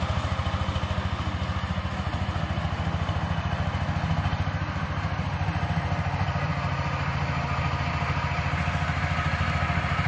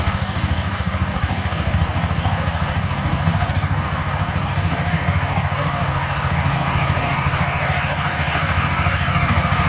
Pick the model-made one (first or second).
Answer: second